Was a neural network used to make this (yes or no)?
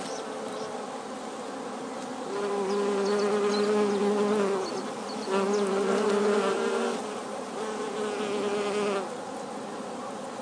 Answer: no